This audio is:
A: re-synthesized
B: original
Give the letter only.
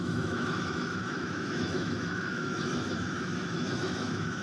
A